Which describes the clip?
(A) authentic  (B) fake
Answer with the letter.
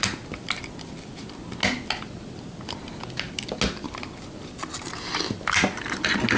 A